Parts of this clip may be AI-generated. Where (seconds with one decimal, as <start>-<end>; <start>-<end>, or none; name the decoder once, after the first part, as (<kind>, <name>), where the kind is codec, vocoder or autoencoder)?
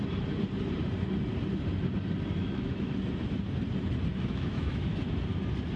2.4-2.9 (autoencoder, DAC-VAE); 4.1-4.9